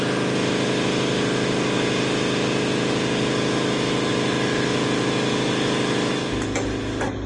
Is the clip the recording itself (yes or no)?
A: yes